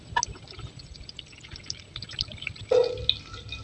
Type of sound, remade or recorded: recorded